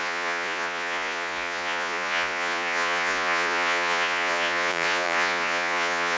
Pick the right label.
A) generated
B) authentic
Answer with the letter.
A